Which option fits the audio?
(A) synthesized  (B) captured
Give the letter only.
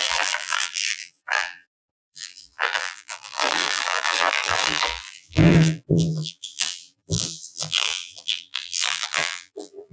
A